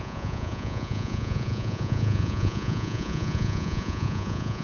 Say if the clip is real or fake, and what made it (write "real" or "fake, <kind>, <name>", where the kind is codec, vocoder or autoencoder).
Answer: fake, vocoder, Vocos